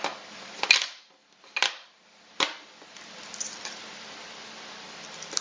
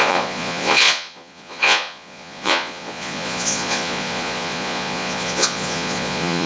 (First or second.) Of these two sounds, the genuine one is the first